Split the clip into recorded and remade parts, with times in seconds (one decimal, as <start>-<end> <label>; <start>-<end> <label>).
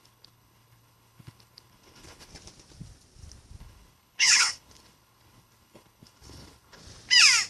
0.0-2.3 remade; 2.3-3.6 recorded; 3.6-6.8 remade; 6.8-7.5 recorded